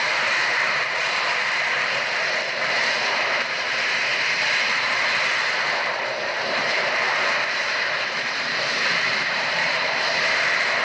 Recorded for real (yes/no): no